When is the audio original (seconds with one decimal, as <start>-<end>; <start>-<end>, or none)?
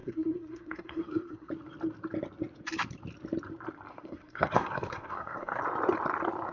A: 1.5-3.9; 5.6-6.5